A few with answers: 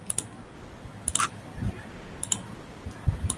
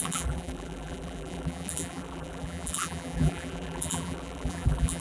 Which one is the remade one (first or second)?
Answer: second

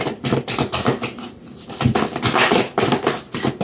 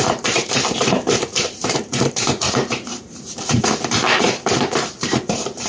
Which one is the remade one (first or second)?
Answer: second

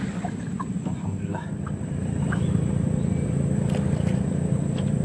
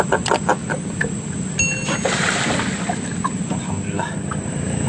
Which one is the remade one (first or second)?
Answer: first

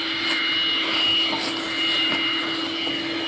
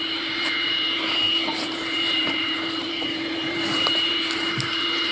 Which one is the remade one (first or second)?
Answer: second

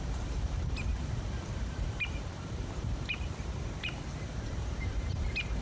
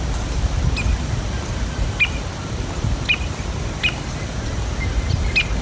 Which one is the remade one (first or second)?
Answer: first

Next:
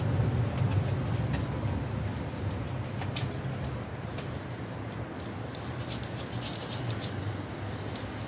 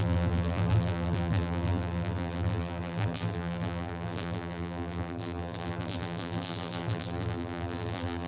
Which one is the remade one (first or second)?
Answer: second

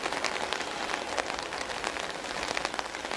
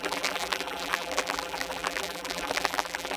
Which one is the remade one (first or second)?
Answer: second